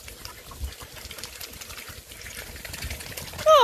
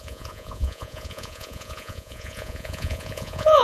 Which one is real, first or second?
first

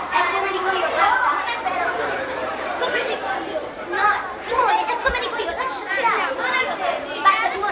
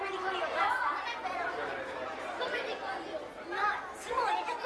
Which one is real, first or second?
second